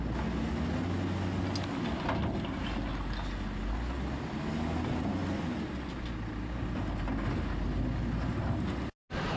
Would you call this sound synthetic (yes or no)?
no